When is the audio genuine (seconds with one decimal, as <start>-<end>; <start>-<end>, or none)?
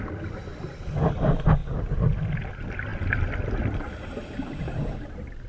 0.0-5.5